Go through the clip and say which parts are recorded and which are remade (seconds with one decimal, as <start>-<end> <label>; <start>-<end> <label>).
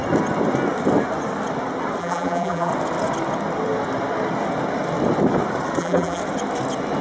0.0-2.0 recorded; 2.0-2.7 remade; 2.7-5.8 recorded; 5.8-6.2 remade; 6.2-7.0 recorded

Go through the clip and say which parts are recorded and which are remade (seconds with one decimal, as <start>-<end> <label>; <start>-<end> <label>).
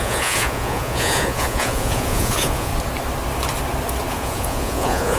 0.0-2.7 remade; 2.7-4.1 recorded; 4.1-5.2 remade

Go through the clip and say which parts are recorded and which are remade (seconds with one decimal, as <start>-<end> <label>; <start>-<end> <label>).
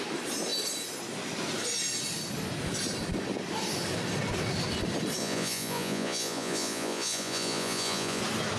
0.0-5.2 recorded; 5.2-8.2 remade; 8.2-8.6 recorded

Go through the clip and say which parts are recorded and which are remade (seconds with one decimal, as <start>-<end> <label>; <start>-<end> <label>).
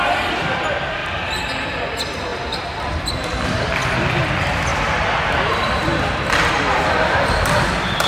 0.0-2.3 remade; 2.3-3.5 recorded; 3.5-5.9 remade; 5.9-6.8 recorded; 6.8-8.1 remade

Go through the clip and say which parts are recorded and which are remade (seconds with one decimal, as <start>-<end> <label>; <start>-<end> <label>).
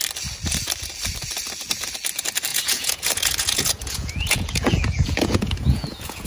0.0-2.5 recorded; 2.5-6.3 remade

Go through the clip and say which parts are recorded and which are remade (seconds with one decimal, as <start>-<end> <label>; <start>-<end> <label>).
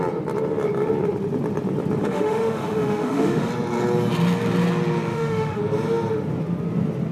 0.0-2.0 recorded; 2.0-3.5 remade; 3.5-5.1 recorded; 5.1-5.6 remade; 5.6-7.1 recorded